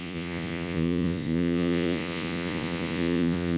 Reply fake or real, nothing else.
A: fake